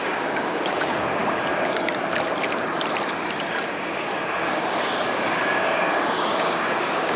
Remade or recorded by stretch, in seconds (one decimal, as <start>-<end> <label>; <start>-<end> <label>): 0.0-1.2 remade; 1.2-3.8 recorded; 3.8-7.2 remade